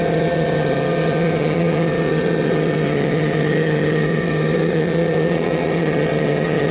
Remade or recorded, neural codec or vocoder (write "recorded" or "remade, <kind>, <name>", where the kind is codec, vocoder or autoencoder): remade, vocoder, HiFi-GAN